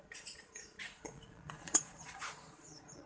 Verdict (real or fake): fake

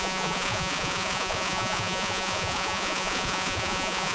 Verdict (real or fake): fake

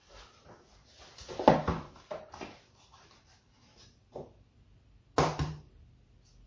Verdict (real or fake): real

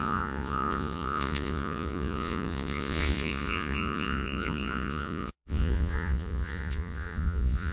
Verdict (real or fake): fake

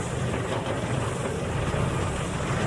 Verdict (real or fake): real